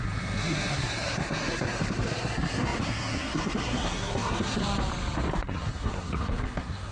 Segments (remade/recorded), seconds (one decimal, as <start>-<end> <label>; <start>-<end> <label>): 0.0-4.6 remade; 4.6-5.3 recorded; 5.3-6.9 remade